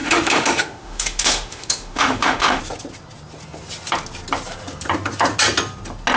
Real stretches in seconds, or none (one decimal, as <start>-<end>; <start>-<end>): 2.6-6.2